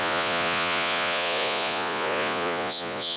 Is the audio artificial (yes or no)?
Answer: yes